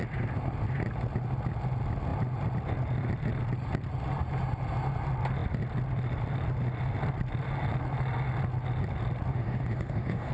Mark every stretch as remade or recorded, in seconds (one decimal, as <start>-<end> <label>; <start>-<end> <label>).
0.0-9.3 recorded; 9.3-10.3 remade